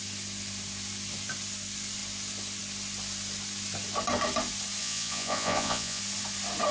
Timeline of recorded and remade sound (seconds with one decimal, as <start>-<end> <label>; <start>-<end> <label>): 0.0-4.8 recorded; 4.8-6.0 remade; 6.0-6.7 recorded